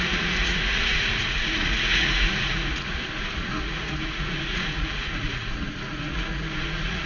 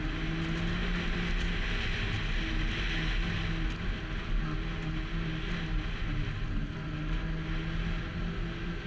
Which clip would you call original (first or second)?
second